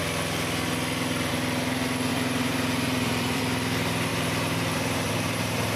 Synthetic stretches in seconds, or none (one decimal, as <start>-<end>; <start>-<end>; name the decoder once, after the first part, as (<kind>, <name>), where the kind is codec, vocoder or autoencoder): 2.1-3.4 (vocoder, BigVGAN v2); 4.1-5.8